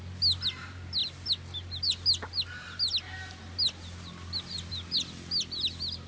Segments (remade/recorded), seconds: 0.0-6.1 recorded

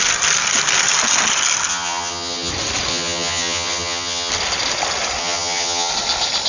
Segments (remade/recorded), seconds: 0.0-1.7 recorded; 1.7-2.5 remade; 2.5-2.9 recorded; 2.9-4.3 remade; 4.3-5.2 recorded; 5.2-5.9 remade; 5.9-6.5 recorded

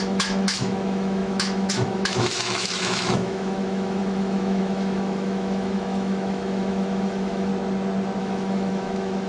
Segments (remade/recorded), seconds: 0.0-7.5 remade; 7.5-8.2 recorded; 8.2-9.3 remade

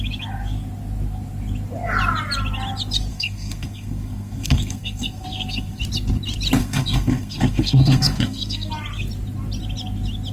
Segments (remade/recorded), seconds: 0.0-3.1 recorded; 3.1-5.8 remade; 5.8-6.6 recorded; 6.6-8.7 remade; 8.7-10.3 recorded

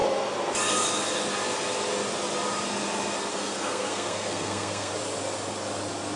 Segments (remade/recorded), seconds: 0.0-3.3 recorded; 3.3-4.9 remade; 4.9-6.2 recorded

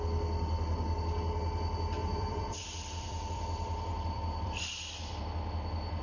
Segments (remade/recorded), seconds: 0.0-2.0 recorded; 2.0-5.2 remade; 5.2-6.0 recorded